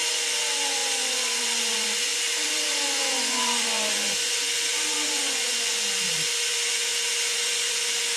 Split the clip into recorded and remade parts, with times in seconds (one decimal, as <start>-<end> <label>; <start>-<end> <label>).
0.0-8.2 remade